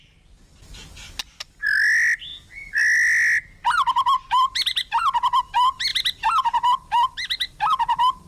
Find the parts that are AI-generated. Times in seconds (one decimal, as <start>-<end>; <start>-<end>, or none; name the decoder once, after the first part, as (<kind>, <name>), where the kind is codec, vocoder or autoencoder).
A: none